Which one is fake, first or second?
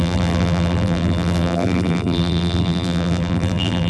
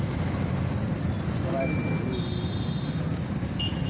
first